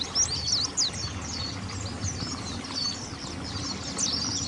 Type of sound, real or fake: real